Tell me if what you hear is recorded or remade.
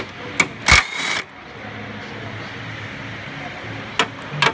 recorded